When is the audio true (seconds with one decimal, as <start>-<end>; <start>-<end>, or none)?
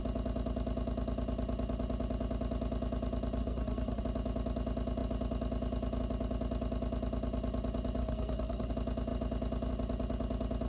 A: 0.0-3.4; 4.0-8.0; 8.7-10.7